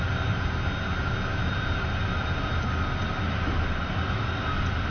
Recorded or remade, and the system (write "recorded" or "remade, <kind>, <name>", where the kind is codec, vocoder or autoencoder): recorded